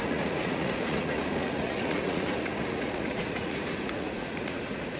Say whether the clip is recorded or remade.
remade